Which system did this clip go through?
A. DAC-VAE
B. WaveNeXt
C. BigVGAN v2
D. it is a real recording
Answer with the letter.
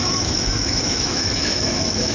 A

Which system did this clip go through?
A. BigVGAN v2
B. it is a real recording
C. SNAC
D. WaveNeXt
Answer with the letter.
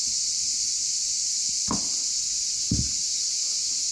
B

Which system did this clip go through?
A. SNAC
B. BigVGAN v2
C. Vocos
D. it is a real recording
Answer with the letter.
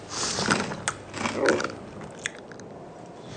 D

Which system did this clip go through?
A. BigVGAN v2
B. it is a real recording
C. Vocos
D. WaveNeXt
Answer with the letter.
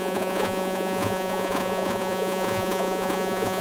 C